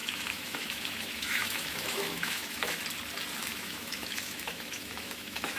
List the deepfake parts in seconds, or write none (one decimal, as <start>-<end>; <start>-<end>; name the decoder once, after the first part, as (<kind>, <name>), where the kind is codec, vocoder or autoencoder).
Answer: 0.0-2.8 (autoencoder, DAC-VAE); 3.4-5.6